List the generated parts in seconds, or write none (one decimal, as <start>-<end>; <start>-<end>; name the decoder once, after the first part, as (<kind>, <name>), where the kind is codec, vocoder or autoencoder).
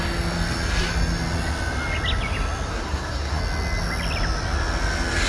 2.7-3.4 (codec, SNAC)